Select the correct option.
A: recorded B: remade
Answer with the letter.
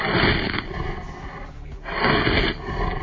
A